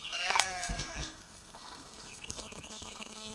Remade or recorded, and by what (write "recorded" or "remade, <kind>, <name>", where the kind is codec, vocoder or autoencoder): remade, codec, SNAC